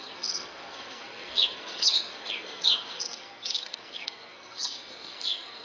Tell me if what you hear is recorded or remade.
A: remade